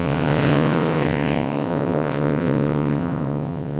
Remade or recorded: remade